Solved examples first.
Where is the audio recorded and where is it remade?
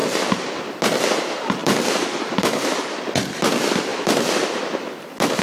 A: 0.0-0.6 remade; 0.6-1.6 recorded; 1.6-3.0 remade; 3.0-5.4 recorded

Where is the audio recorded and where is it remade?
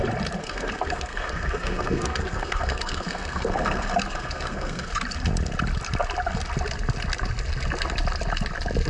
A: 0.0-0.4 recorded; 0.4-4.9 remade; 4.9-8.9 recorded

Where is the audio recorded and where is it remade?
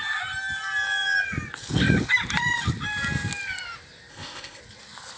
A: 0.0-4.1 recorded; 4.1-4.6 remade; 4.6-5.2 recorded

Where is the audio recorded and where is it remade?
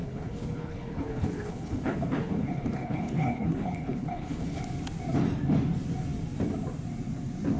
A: 0.0-4.6 remade; 4.6-7.6 recorded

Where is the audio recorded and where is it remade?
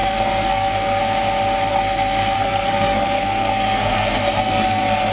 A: 0.0-1.0 remade; 1.0-1.7 recorded; 1.7-5.1 remade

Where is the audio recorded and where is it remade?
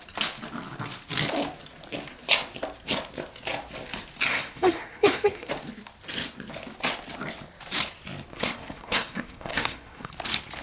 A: 0.0-4.3 recorded; 4.3-5.5 remade; 5.5-8.3 recorded; 8.3-10.1 remade; 10.1-10.6 recorded